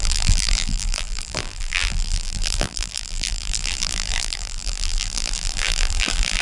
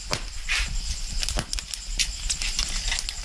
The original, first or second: second